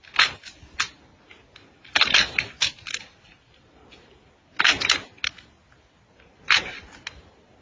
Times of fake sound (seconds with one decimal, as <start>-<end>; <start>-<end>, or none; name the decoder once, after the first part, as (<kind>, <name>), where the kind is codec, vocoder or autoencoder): none